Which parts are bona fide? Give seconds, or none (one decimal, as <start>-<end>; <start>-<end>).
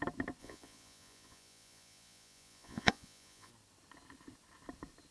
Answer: 0.0-0.4; 3.5-5.1